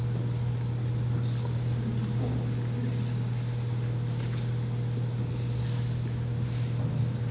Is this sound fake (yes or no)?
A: no